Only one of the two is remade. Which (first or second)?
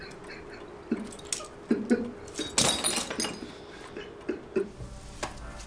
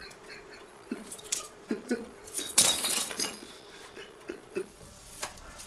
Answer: second